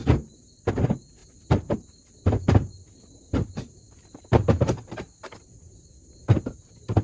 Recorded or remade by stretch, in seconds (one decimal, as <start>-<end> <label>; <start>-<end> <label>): 0.0-0.7 remade; 0.7-1.2 recorded; 1.2-4.9 remade; 4.9-7.0 recorded